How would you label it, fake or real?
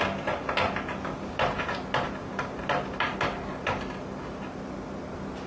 real